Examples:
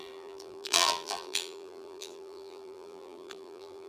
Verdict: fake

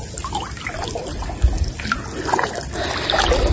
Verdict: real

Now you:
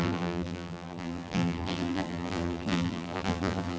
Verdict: fake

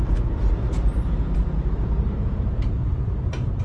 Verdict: fake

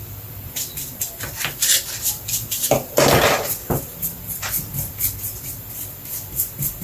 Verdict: fake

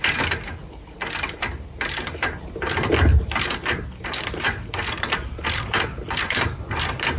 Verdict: fake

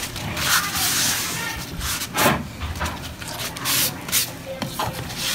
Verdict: fake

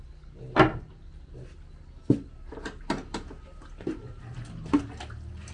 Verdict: real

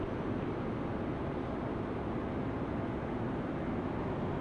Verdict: real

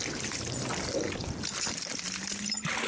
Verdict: fake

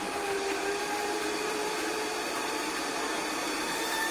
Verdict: fake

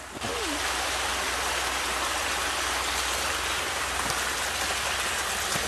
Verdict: real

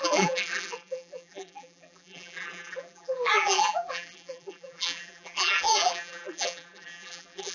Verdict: fake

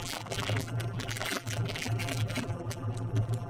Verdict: fake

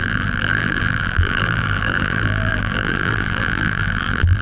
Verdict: fake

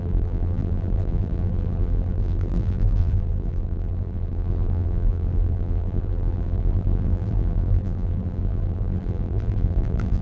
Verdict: fake